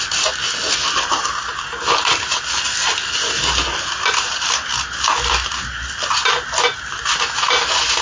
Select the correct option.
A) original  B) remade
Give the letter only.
A